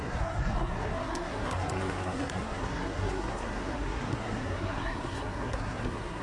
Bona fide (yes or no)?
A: no